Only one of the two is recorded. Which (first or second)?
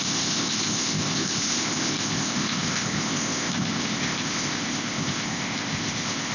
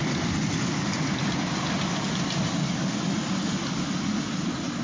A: second